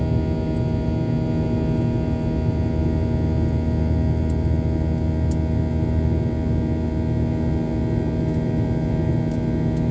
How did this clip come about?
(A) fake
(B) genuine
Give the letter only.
B